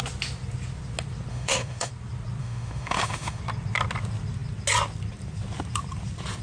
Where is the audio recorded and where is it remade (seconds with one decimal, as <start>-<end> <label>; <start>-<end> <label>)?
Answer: 0.0-1.3 recorded; 1.3-1.9 remade; 1.9-2.4 recorded; 2.4-3.4 remade; 3.4-6.4 recorded